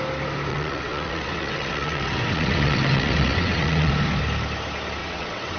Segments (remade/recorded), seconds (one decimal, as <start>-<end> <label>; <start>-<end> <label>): 0.0-0.5 recorded; 0.5-3.9 remade; 3.9-5.0 recorded; 5.0-5.6 remade